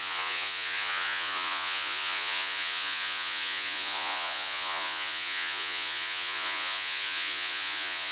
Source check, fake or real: fake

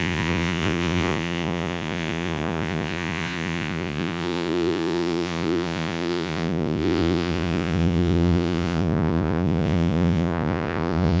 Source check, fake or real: fake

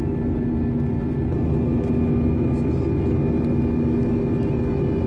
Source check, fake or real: real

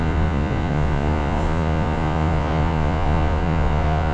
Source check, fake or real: fake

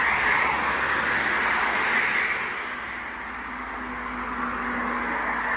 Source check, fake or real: real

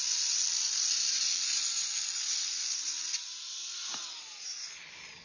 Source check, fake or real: real